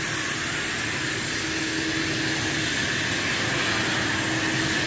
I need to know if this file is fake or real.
real